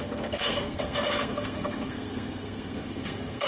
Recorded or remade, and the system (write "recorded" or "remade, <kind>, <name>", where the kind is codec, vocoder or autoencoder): remade, codec, SNAC